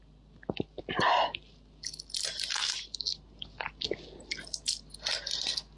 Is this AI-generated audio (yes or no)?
no